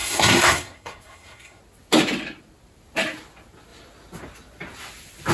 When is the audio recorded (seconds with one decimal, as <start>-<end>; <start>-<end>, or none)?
1.6-5.3